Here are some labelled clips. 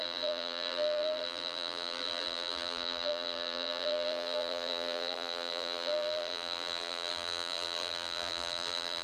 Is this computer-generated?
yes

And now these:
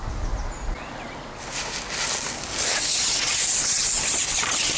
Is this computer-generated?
no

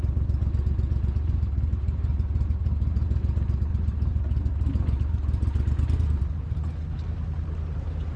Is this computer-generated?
no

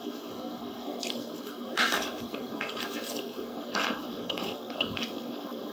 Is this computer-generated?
yes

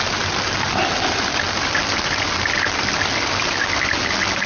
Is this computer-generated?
no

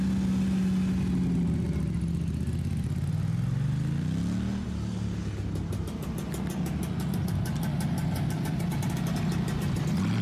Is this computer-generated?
no